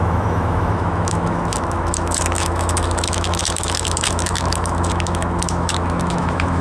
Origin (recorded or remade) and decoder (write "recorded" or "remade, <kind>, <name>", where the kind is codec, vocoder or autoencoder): remade, autoencoder, DAC-VAE